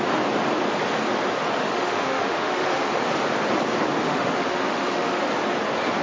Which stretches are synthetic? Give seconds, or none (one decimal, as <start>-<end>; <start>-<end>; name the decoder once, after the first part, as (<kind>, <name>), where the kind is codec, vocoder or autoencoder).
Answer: 1.6-3.0 (autoencoder, DAC-VAE); 4.0-5.2